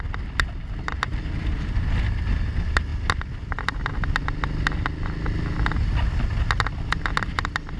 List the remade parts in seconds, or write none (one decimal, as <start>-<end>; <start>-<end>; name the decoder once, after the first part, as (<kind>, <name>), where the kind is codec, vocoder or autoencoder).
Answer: none